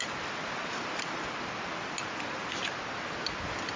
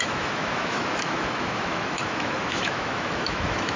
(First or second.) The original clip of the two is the first